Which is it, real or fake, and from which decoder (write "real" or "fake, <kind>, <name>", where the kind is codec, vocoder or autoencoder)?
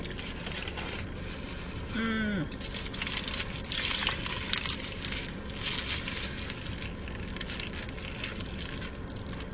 real